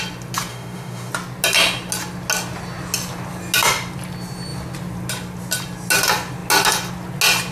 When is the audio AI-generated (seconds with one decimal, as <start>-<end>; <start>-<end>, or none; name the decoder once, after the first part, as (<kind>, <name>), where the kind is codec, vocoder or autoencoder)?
0.5-1.1 (autoencoder, DAC-VAE)